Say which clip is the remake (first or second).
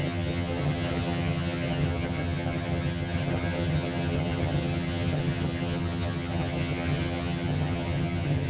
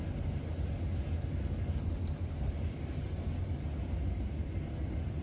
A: first